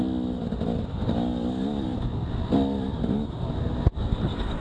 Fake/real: real